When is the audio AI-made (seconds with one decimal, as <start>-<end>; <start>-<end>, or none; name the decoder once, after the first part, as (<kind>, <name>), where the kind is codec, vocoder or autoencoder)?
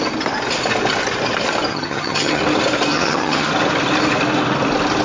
1.7-2.4 (vocoder, HiFi-GAN); 2.9-3.5